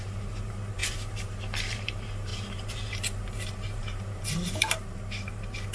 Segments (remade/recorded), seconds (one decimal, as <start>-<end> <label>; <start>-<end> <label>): 0.0-5.7 remade